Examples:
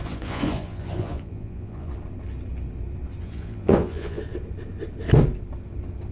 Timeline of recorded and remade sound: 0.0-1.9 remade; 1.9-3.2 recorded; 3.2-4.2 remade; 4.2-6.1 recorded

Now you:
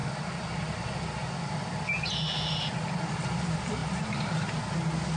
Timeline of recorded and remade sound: 0.0-5.2 recorded

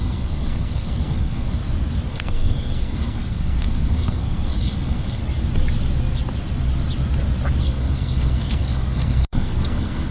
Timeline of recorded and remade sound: 0.0-1.6 remade; 1.6-2.1 recorded; 2.1-5.2 remade; 5.2-7.6 recorded; 7.6-10.1 remade

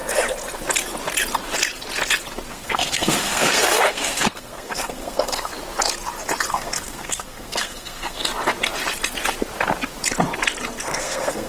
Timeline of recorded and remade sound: 0.0-2.5 recorded; 2.5-5.5 remade; 5.5-6.5 recorded; 6.5-8.2 remade; 8.2-10.8 recorded; 10.8-11.5 remade

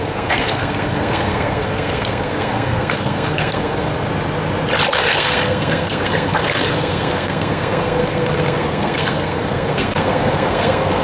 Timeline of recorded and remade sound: 0.0-3.9 remade; 3.9-4.9 recorded; 4.9-11.0 remade